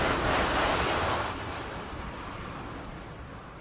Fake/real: real